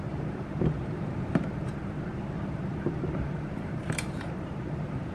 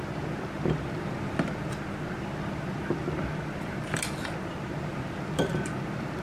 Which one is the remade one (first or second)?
first